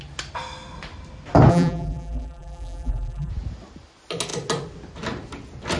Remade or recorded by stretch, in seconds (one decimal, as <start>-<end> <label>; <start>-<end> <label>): 0.0-1.5 recorded; 1.5-3.3 remade; 3.3-5.8 recorded

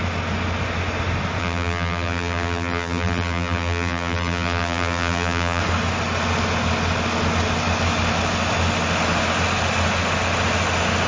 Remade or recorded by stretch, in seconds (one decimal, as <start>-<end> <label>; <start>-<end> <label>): 0.0-1.4 recorded; 1.4-5.6 remade; 5.6-11.1 recorded

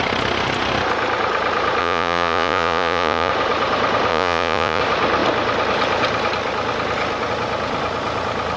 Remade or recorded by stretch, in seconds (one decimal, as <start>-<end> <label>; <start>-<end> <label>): 0.0-1.8 recorded; 1.8-3.3 remade; 3.3-4.1 recorded; 4.1-4.8 remade; 4.8-8.6 recorded

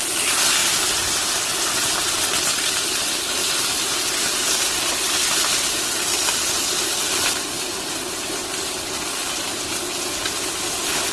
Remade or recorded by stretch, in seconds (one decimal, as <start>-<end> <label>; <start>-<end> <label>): 0.0-3.4 recorded; 3.4-5.1 remade; 5.1-11.1 recorded

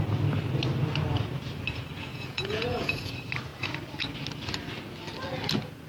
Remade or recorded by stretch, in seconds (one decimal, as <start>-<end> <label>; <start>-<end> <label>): 0.0-2.1 recorded; 2.1-3.1 remade; 3.1-5.9 recorded

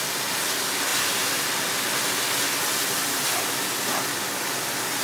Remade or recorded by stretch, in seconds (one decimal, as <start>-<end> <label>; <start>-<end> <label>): 0.0-5.0 recorded

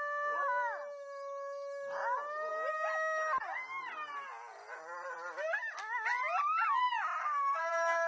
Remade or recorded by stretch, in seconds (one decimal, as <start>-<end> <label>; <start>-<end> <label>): 0.0-7.2 recorded; 7.2-8.1 remade